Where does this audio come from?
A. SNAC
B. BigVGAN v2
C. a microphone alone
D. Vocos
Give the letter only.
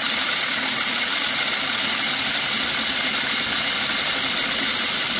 C